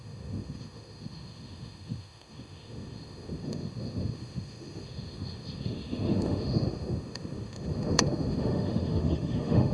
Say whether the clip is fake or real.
fake